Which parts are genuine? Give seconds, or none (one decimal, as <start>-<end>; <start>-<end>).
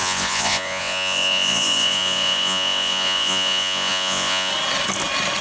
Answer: 4.5-5.4